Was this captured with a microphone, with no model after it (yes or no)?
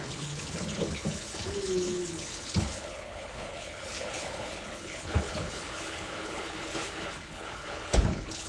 no